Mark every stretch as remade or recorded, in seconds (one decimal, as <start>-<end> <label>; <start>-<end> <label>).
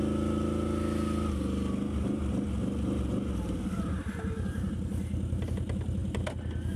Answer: 0.0-6.8 recorded